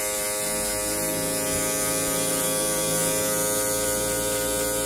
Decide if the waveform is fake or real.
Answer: real